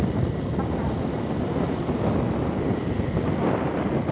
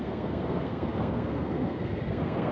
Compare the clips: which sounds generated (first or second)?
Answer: second